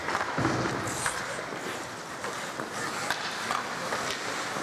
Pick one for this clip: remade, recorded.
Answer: recorded